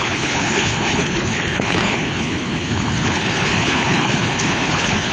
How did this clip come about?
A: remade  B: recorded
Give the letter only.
A